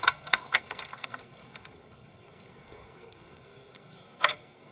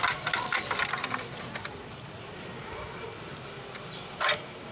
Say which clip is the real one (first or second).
second